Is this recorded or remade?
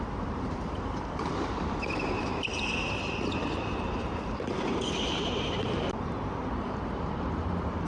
remade